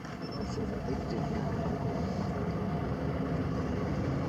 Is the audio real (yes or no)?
no